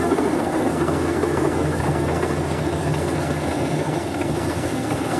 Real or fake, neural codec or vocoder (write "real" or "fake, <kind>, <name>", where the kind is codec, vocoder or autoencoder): fake, codec, SNAC